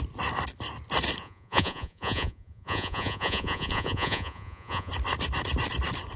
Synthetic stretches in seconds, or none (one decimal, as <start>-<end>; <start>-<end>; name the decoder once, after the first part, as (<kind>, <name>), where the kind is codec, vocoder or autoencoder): 1.2-4.9 (vocoder, Vocos)